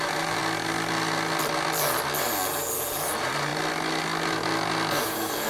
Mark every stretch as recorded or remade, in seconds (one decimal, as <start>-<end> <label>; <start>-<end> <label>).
0.0-0.4 remade; 0.4-3.1 recorded; 3.1-3.5 remade; 3.5-5.0 recorded; 5.0-5.5 remade